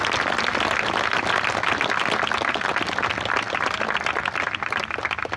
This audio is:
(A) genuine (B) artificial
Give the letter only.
A